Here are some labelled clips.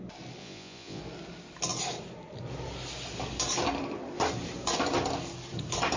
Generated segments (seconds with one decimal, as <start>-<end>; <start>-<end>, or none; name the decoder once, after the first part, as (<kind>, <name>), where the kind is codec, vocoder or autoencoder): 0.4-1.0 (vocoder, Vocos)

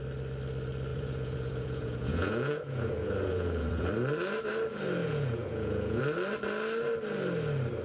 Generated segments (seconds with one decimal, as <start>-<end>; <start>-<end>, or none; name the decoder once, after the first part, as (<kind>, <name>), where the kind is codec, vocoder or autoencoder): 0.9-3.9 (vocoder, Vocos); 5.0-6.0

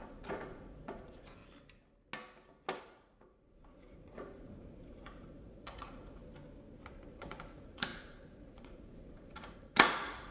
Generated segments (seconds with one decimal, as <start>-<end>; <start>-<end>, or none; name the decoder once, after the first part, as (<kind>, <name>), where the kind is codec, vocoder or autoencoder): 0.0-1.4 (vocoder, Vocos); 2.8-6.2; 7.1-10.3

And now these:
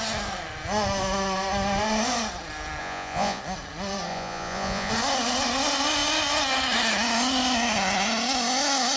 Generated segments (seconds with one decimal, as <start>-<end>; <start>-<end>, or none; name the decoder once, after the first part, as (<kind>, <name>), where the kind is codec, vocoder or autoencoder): 2.8-3.4 (vocoder, Vocos); 4.1-4.9

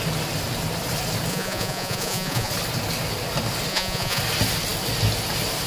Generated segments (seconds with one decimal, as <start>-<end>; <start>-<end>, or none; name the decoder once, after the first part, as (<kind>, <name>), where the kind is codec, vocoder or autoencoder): 1.3-2.5 (vocoder, Vocos); 3.7-4.2

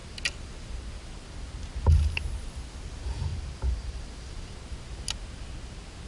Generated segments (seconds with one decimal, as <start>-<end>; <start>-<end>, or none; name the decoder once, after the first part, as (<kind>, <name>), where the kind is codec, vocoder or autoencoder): none

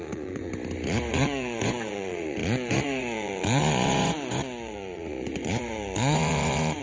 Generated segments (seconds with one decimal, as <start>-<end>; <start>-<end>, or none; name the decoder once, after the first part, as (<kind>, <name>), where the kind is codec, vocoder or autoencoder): 0.0-0.5 (vocoder, Vocos); 1.1-6.8